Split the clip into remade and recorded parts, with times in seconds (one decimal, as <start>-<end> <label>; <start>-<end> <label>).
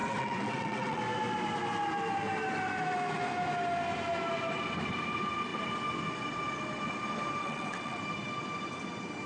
0.0-1.0 remade; 1.0-7.4 recorded; 7.4-8.0 remade; 8.0-9.3 recorded